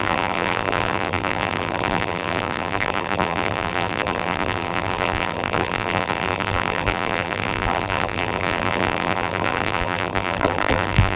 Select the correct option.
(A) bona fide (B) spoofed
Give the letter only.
B